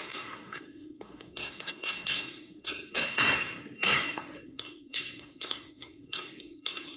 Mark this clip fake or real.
fake